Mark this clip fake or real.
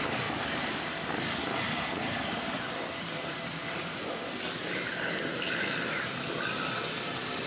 real